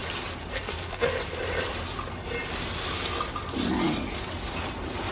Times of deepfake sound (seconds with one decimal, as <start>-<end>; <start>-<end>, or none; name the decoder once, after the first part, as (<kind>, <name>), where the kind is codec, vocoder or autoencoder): 0.5-1.2 (codec, SNAC)